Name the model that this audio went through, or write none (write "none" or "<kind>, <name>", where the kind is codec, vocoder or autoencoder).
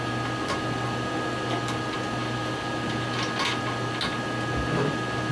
none